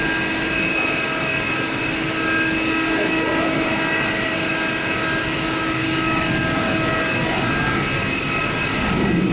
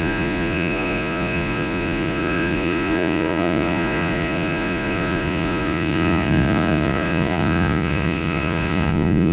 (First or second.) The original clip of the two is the first